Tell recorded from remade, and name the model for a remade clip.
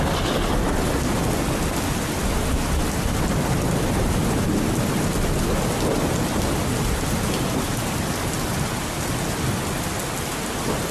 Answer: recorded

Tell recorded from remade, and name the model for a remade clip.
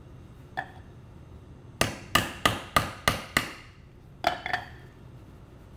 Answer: recorded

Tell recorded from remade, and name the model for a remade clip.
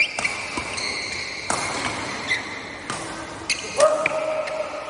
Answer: recorded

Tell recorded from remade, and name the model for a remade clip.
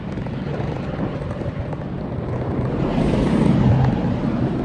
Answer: recorded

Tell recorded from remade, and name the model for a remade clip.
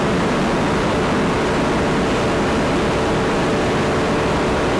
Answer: recorded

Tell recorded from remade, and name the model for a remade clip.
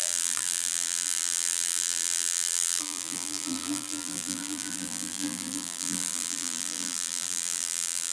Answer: remade, vocoder, BigVGAN v2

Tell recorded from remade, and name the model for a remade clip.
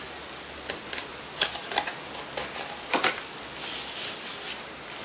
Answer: recorded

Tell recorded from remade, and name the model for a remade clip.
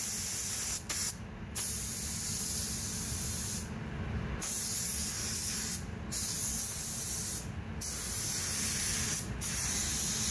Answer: recorded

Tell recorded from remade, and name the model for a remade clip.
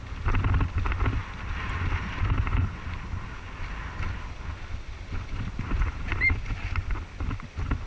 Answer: recorded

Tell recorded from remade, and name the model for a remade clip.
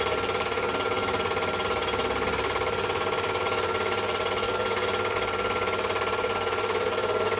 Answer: remade, vocoder, BigVGAN v2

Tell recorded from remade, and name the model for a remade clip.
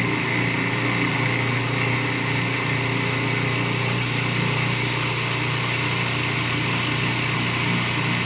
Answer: recorded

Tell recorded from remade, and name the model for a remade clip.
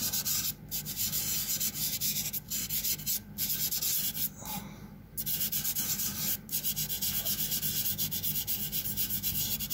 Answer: recorded